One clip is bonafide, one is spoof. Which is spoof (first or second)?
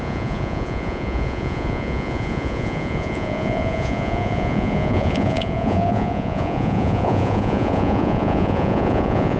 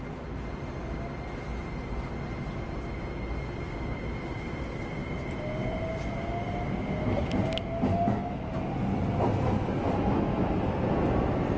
first